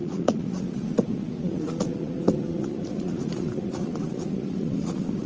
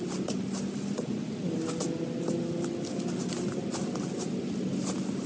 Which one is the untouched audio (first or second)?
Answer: second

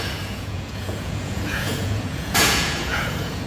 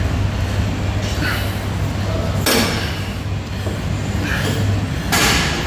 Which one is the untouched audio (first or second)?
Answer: second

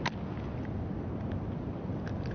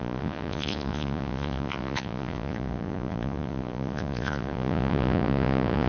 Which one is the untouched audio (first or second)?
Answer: first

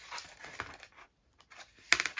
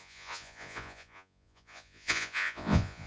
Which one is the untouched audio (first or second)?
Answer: first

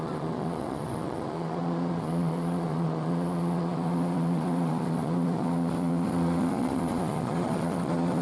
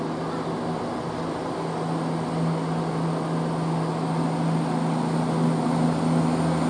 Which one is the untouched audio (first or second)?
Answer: second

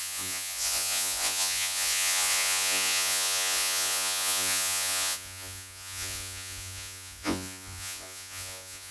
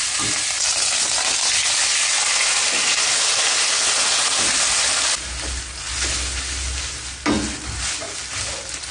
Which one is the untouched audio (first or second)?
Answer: second